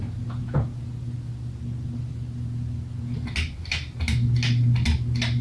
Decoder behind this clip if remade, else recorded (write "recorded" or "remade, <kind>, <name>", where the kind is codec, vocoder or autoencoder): recorded